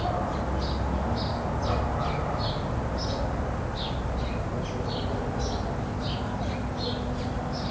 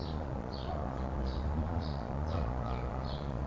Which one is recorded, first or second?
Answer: first